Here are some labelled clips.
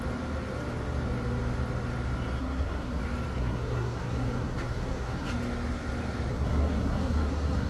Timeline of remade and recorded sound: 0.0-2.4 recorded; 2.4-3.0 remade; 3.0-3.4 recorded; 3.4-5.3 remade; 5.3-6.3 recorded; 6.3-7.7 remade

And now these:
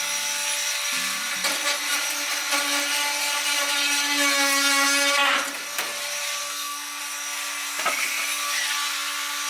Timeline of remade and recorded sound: 0.0-6.4 recorded; 6.4-7.0 remade; 7.0-9.5 recorded

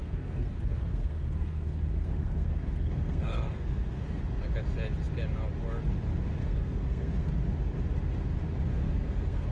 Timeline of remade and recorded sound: 0.0-4.2 remade; 4.2-6.4 recorded; 6.4-7.3 remade; 7.3-8.7 recorded; 8.7-9.5 remade

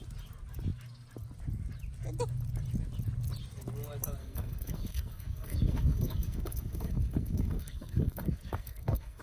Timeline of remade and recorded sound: 0.0-4.2 recorded; 4.2-9.2 remade

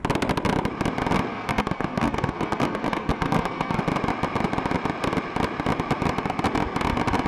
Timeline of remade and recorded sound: 0.0-1.3 recorded; 1.3-3.8 remade; 3.8-7.3 recorded